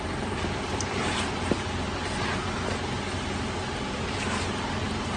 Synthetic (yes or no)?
no